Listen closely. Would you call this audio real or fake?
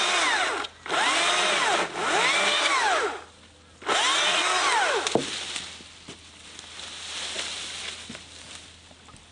real